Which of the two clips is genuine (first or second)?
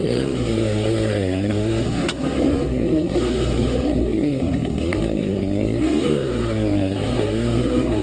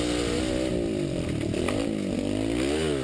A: second